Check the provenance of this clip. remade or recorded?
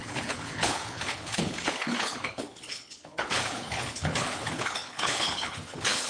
remade